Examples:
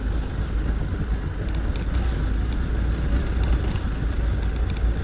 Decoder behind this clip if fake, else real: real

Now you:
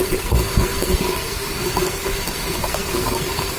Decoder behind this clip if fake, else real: fake, codec, SNAC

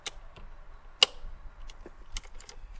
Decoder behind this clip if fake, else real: real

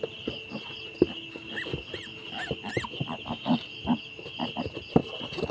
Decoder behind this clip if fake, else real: real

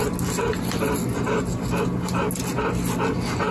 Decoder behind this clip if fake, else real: real